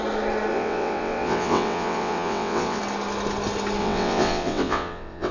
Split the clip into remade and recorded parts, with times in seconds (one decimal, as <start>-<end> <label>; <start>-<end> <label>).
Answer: 0.0-0.5 recorded; 0.5-2.8 remade; 2.8-3.8 recorded; 3.8-5.3 remade